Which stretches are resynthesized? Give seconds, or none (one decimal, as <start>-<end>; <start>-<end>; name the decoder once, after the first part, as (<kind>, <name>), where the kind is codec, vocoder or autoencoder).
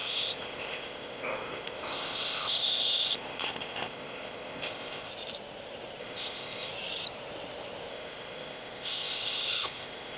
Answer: 0.0-5.1 (codec, ZipCodec); 6.0-6.7; 7.9-10.2